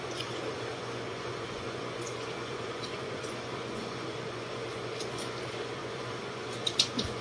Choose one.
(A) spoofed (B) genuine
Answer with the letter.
A